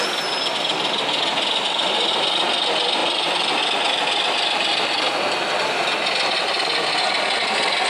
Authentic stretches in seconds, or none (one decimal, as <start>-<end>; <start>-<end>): 0.0-7.9